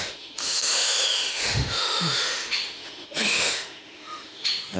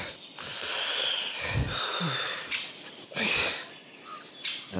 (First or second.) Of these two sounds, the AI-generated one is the first